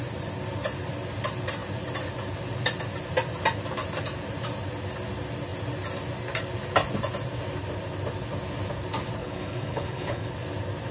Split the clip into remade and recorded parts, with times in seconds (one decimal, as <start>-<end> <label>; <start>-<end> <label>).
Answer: 0.0-9.2 recorded; 9.2-10.3 remade; 10.3-10.9 recorded